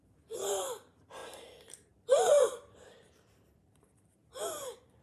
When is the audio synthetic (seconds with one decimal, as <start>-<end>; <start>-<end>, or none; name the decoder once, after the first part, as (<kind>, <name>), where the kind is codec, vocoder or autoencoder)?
0.0-5.0 (vocoder, BigVGAN v2)